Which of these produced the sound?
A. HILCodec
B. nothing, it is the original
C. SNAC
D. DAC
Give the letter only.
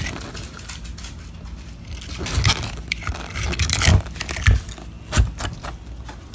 B